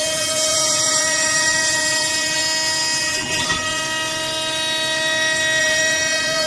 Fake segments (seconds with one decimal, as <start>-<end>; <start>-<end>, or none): 0.0-2.4; 3.0-3.8; 5.6-6.5